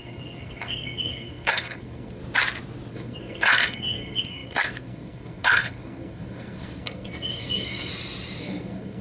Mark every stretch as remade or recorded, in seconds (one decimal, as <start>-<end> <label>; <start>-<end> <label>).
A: 0.0-2.2 remade; 2.2-2.9 recorded; 2.9-7.9 remade; 7.9-8.4 recorded; 8.4-9.0 remade

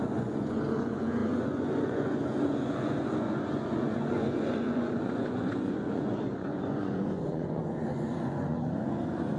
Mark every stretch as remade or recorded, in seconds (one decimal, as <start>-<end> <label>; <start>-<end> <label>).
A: 0.0-9.4 remade

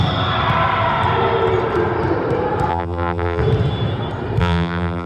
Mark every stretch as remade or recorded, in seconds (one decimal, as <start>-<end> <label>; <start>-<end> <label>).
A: 0.0-2.7 recorded; 2.7-3.4 remade; 3.4-4.4 recorded; 4.4-5.1 remade

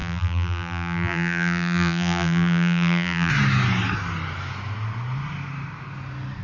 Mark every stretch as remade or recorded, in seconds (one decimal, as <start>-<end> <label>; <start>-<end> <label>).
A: 0.0-3.3 remade; 3.3-6.4 recorded

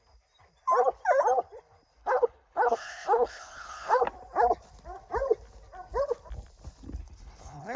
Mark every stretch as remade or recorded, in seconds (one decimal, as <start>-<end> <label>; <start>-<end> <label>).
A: 0.0-2.0 recorded; 2.0-4.0 remade; 4.0-7.0 recorded; 7.0-7.8 remade